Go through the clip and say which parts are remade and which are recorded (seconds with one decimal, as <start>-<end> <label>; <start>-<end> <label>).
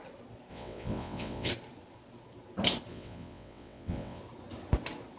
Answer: 0.0-0.5 recorded; 0.5-1.5 remade; 1.5-2.9 recorded; 2.9-4.2 remade; 4.2-5.2 recorded